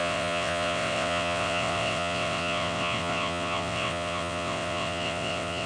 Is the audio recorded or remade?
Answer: remade